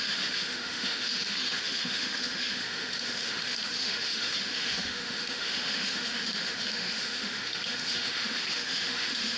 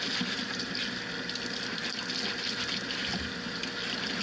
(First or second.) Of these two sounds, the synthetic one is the first